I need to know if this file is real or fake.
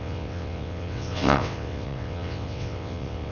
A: fake